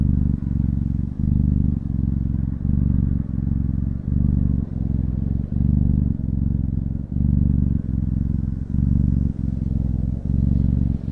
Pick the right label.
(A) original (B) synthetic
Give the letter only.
A